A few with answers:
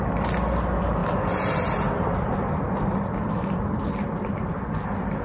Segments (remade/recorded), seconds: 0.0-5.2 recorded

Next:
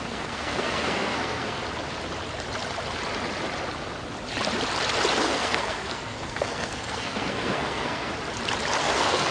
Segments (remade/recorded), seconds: 0.0-1.6 remade; 1.6-5.2 recorded; 5.2-8.1 remade; 8.1-8.8 recorded; 8.8-9.3 remade

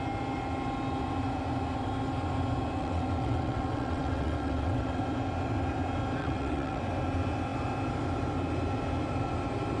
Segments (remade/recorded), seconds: 0.0-2.8 recorded; 2.8-5.0 remade; 5.0-6.2 recorded; 6.2-6.8 remade; 6.8-9.8 recorded